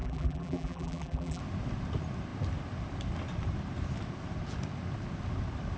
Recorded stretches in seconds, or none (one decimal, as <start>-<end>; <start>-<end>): 1.4-5.8